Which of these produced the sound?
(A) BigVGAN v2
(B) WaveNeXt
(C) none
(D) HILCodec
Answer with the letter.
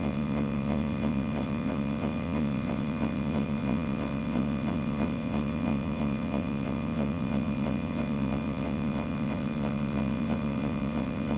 B